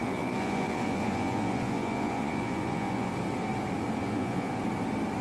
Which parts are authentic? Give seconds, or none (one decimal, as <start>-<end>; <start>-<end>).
3.1-4.0; 4.6-5.2